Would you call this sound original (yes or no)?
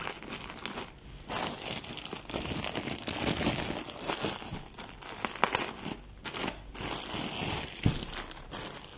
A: yes